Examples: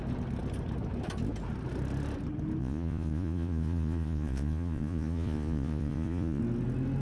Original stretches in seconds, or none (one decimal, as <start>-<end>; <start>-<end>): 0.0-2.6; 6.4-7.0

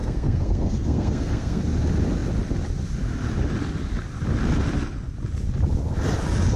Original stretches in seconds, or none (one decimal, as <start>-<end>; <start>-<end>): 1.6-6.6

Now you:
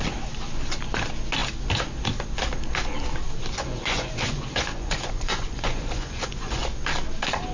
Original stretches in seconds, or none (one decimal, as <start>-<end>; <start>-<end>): 0.0-3.6; 6.6-7.5

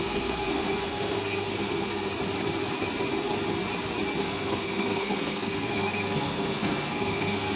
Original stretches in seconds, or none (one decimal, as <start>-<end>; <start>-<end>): 2.1-4.2

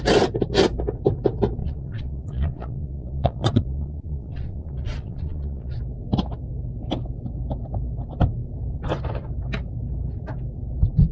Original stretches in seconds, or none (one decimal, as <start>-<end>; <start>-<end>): 0.0-1.6; 5.8-11.1

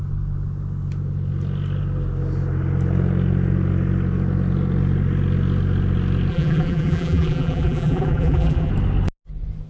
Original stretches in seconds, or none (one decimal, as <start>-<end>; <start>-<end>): 0.0-6.3; 8.7-9.7